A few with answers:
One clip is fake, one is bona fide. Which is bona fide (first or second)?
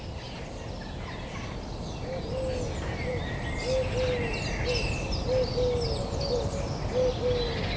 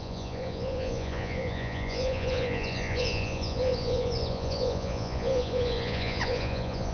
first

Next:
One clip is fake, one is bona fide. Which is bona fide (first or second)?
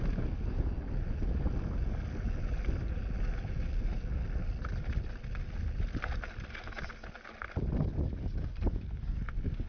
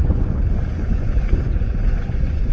first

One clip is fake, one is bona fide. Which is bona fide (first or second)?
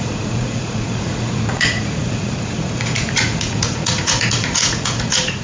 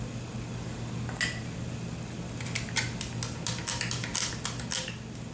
second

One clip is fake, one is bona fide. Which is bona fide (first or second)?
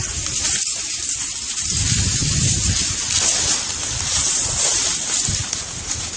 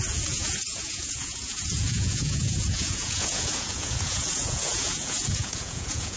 first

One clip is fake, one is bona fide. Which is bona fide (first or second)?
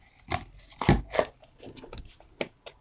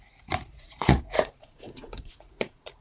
first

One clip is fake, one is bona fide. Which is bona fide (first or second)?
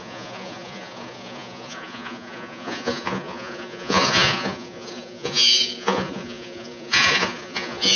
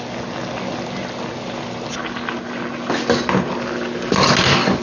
second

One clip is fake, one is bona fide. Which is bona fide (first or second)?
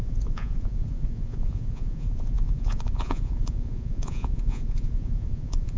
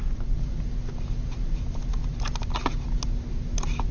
second